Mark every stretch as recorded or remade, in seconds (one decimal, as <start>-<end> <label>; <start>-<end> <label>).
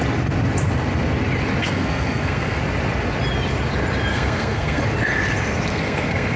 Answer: 0.0-1.6 recorded; 1.6-2.6 remade; 2.6-4.1 recorded; 4.1-4.8 remade; 4.8-5.7 recorded; 5.7-6.4 remade